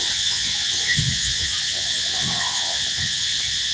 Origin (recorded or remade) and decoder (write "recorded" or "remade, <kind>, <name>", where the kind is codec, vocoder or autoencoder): remade, vocoder, WaveNeXt